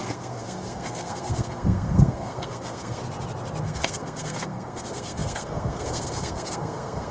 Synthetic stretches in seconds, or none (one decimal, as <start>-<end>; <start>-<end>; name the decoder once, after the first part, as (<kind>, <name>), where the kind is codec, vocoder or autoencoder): 0.0-3.0 (codec, SNAC); 3.6-7.1